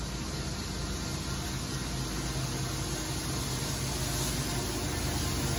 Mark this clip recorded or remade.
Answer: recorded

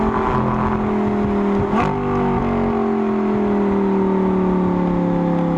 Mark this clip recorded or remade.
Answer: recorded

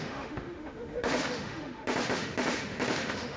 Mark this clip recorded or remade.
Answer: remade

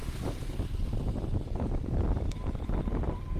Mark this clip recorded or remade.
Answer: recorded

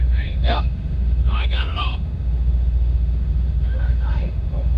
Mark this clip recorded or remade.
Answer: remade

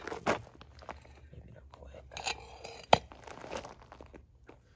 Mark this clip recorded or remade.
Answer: recorded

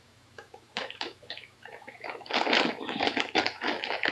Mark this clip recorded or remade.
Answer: remade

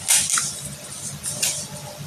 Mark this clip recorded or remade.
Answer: recorded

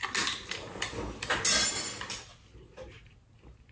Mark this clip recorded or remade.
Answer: recorded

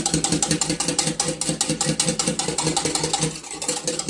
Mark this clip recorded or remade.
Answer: recorded